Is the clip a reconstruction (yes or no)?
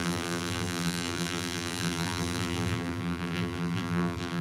yes